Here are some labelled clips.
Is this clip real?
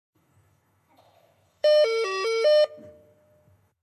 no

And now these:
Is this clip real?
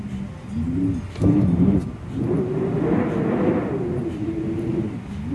yes